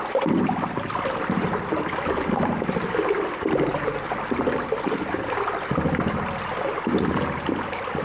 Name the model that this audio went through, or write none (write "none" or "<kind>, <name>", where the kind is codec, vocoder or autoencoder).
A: vocoder, BigVGAN v2